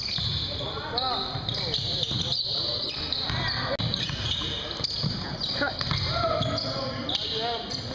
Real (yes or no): yes